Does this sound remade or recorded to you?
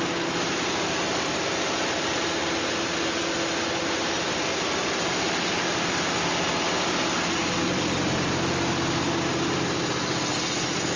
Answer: recorded